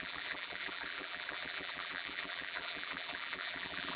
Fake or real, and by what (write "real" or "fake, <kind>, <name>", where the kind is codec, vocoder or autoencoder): fake, vocoder, BigVGAN v2